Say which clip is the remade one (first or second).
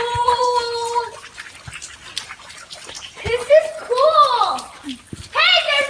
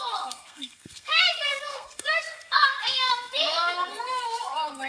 second